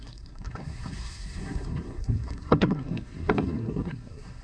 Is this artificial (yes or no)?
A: yes